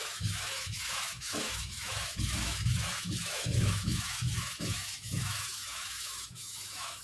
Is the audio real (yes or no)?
no